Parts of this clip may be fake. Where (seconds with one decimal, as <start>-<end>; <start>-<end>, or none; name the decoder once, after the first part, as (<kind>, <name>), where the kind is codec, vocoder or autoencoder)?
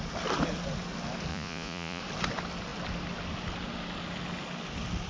1.3-2.0 (vocoder, Vocos)